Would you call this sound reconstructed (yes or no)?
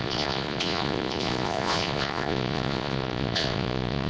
yes